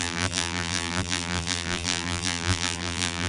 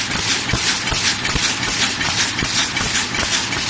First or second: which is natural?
second